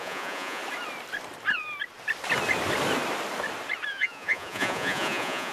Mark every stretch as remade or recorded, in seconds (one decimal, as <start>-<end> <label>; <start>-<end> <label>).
0.0-0.6 remade; 0.6-3.9 recorded; 3.9-5.5 remade